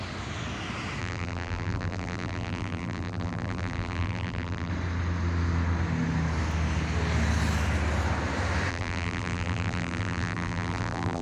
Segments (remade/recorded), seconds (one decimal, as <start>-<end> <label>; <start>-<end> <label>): 0.0-1.0 recorded; 1.0-4.7 remade; 4.7-8.7 recorded; 8.7-11.2 remade

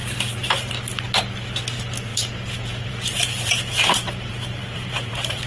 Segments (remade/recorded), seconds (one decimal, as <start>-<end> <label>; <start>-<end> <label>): 0.0-0.7 remade; 0.7-2.1 recorded; 2.1-5.5 remade

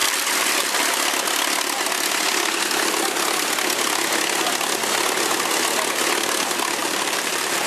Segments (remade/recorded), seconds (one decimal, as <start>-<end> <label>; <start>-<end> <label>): 0.0-6.8 recorded; 6.8-7.7 remade

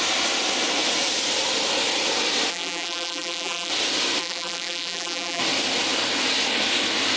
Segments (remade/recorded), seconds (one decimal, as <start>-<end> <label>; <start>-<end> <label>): 0.0-2.5 recorded; 2.5-3.7 remade; 3.7-4.2 recorded; 4.2-5.4 remade; 5.4-7.2 recorded